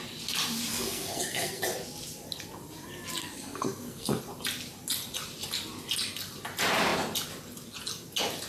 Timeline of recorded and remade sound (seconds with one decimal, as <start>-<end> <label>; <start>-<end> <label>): 0.0-0.7 recorded; 0.7-1.6 remade; 1.6-3.2 recorded; 3.2-4.2 remade; 4.2-8.5 recorded